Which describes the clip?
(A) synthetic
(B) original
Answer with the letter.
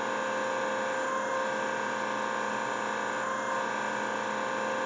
B